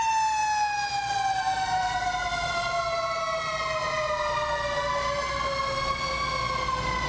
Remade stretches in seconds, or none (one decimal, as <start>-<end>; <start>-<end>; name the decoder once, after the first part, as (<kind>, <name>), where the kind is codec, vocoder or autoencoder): none